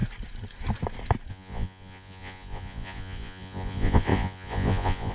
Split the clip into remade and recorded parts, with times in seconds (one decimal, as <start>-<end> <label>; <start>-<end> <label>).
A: 0.0-1.3 recorded; 1.3-5.1 remade

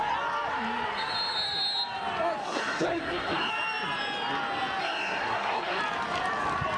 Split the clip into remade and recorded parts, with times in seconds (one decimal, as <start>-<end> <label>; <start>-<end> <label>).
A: 0.0-2.4 recorded; 2.4-3.5 remade; 3.5-4.8 recorded; 4.8-5.8 remade; 5.8-6.8 recorded

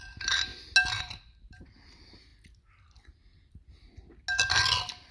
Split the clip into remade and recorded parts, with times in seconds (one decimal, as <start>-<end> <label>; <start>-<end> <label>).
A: 0.0-0.5 remade; 0.5-1.0 recorded; 1.0-2.3 remade; 2.3-5.1 recorded

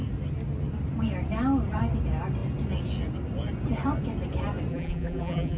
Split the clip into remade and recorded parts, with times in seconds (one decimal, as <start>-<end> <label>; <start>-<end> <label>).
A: 0.0-4.7 recorded; 4.7-5.6 remade

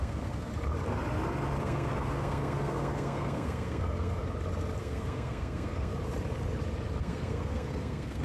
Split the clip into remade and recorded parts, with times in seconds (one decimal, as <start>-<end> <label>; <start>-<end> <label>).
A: 0.0-0.5 remade; 0.5-1.6 recorded; 1.6-4.2 remade; 4.2-4.8 recorded; 4.8-5.9 remade; 5.9-7.0 recorded; 7.0-8.2 remade